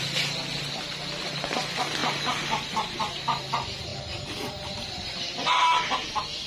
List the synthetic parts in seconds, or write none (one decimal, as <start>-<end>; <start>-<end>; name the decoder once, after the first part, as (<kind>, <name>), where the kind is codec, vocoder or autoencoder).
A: 2.0-3.0 (vocoder, BigVGAN v2); 3.9-4.6